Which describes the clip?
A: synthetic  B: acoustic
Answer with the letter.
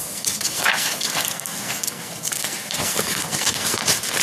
A